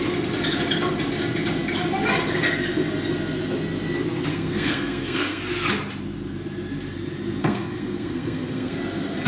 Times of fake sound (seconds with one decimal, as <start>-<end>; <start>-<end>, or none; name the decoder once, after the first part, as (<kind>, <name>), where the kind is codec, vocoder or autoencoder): 4.3-5.4 (codec, SNAC); 7.4-8.8